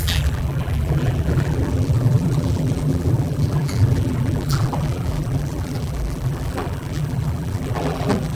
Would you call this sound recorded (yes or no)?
no